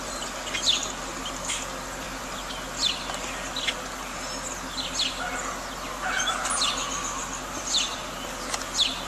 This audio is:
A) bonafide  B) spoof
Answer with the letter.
A